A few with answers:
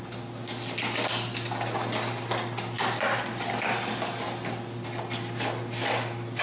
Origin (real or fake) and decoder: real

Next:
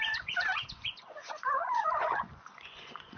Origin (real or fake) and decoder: fake, vocoder, Vocos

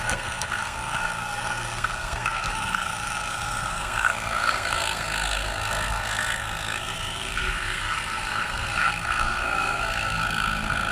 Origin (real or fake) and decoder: fake, codec, SNAC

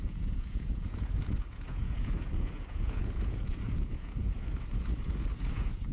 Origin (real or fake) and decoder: fake, vocoder, Vocos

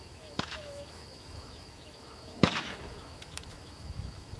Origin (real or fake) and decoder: fake, autoencoder, DAC-VAE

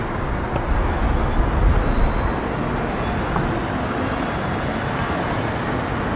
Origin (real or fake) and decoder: real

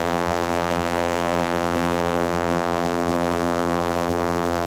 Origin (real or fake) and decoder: fake, vocoder, BigVGAN v2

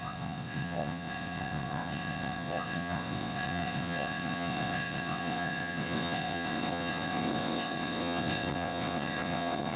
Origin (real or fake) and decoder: fake, vocoder, WaveNeXt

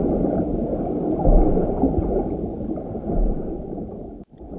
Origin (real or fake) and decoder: real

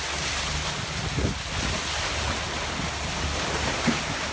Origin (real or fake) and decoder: real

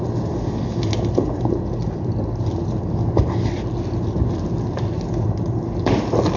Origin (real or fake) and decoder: real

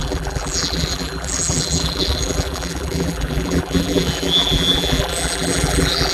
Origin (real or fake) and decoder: fake, vocoder, BigVGAN v2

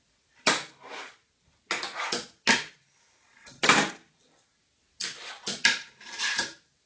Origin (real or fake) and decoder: real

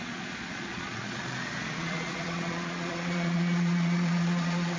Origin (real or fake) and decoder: fake, vocoder, Vocos